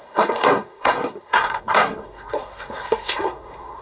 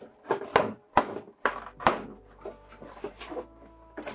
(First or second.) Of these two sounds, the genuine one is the second